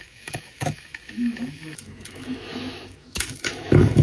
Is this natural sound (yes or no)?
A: no